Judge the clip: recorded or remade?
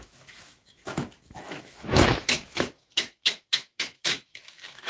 remade